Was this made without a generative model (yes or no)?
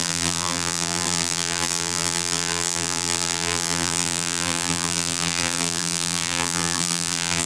no